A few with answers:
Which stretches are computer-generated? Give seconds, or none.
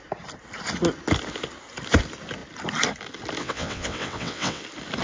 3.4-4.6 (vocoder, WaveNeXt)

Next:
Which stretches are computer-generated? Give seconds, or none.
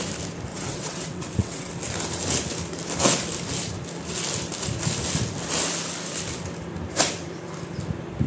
0.5-1.7 (vocoder, WaveNeXt)